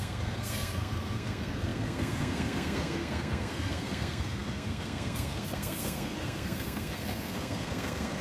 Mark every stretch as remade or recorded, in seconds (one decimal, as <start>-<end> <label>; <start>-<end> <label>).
0.0-8.2 remade